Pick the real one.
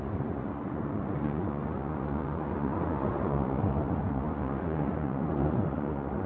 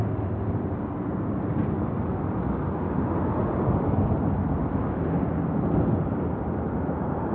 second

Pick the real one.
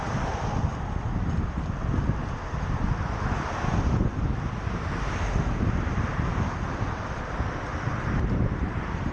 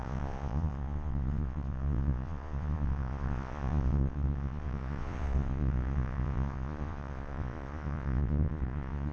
first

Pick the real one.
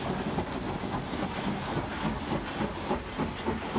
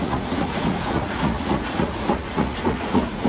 first